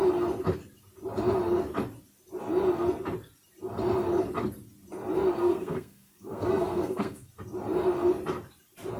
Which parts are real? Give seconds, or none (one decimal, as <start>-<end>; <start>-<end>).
0.0-5.4; 7.3-9.0